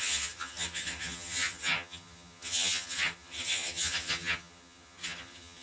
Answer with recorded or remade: remade